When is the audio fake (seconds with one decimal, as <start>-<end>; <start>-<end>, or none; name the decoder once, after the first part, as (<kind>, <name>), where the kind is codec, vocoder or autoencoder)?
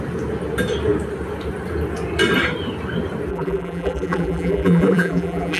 3.3-5.6 (vocoder, BigVGAN v2)